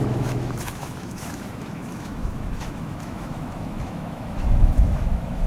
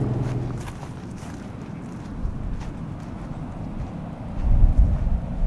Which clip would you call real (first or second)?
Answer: second